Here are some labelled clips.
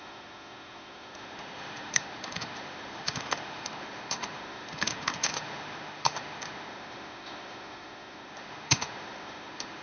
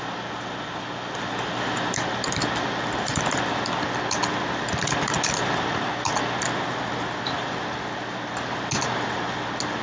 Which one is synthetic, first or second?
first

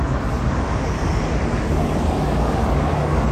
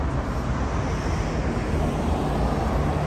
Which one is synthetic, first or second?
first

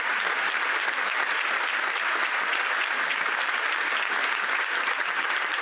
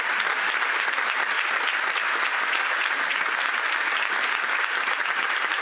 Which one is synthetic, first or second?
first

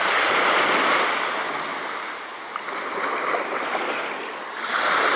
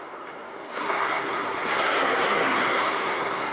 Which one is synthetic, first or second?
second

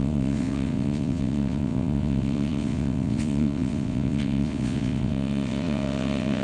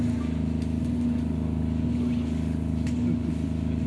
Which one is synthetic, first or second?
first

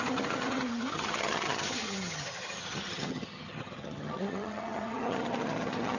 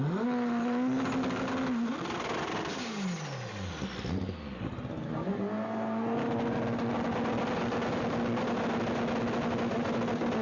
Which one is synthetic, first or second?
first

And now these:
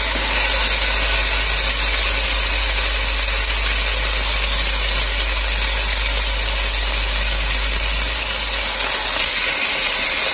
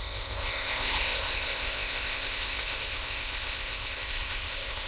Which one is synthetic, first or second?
second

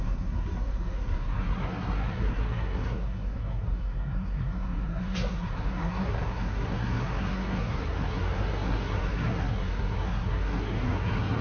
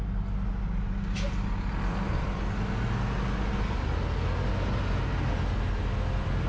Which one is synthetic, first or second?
first